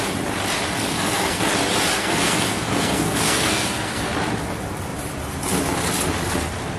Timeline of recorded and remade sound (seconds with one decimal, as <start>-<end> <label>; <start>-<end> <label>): 0.0-0.9 recorded; 0.9-1.4 remade; 1.4-2.0 recorded; 2.0-4.1 remade; 4.1-6.8 recorded